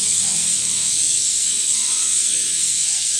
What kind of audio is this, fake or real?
fake